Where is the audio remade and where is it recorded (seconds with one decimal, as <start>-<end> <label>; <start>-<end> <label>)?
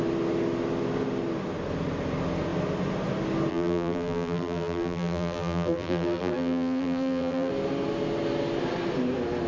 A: 0.0-3.5 recorded; 3.5-7.5 remade; 7.5-9.5 recorded